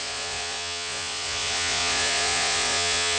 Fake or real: fake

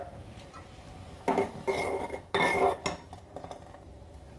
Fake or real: real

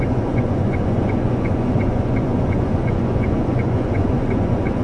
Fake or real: fake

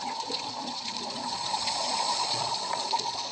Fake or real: fake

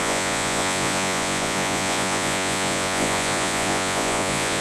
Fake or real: fake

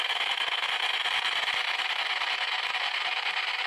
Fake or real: real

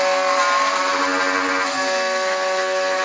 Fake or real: real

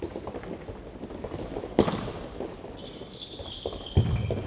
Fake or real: real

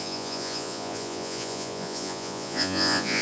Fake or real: fake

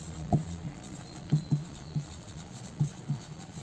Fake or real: fake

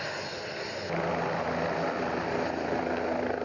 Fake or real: real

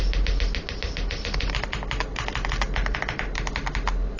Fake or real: real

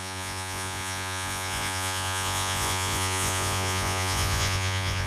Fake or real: fake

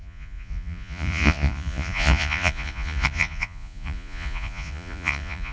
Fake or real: fake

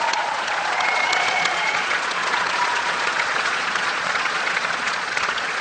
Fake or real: fake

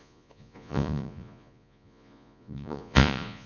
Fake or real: fake